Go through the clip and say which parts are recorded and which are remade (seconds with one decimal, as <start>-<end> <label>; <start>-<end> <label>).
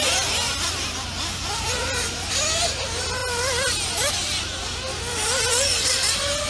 0.0-6.5 recorded